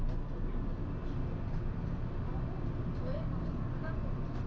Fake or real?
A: real